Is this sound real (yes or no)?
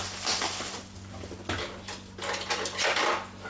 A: yes